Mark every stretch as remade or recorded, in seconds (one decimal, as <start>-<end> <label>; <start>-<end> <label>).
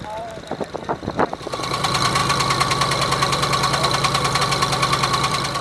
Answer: 0.0-5.6 remade